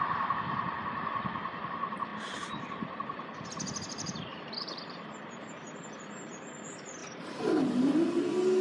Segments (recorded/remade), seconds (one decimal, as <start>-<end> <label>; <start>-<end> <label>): 0.0-8.6 remade